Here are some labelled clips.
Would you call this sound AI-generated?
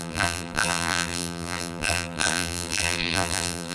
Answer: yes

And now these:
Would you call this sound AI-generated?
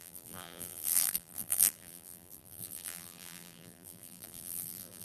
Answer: yes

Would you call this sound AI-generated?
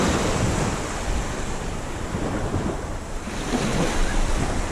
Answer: no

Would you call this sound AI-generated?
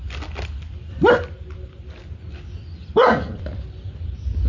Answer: no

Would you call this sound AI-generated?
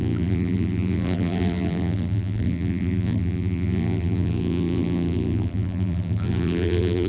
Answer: yes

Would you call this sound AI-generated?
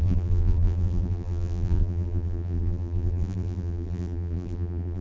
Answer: yes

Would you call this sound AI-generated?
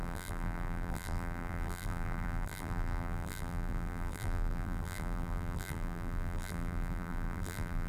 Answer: yes